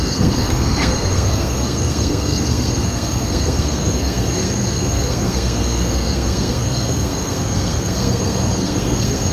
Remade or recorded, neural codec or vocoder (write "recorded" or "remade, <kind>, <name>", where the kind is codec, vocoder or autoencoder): remade, codec, SNAC